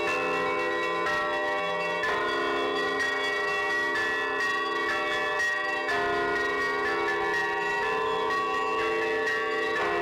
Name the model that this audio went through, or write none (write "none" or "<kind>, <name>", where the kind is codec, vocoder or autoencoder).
none